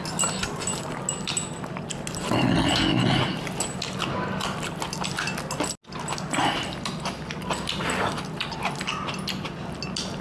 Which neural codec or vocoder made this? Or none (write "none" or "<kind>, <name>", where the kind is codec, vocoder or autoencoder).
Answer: none